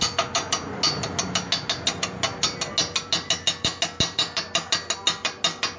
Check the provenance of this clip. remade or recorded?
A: recorded